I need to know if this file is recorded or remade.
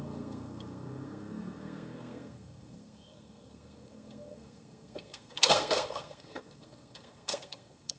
remade